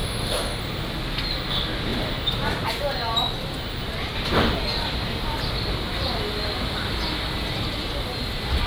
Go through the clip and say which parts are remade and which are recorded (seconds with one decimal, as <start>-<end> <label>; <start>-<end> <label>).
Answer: 0.0-0.6 remade; 0.6-8.7 recorded